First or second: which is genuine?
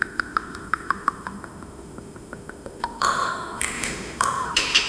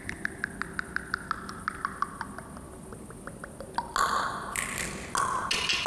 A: second